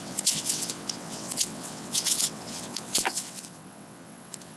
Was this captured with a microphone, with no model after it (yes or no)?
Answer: no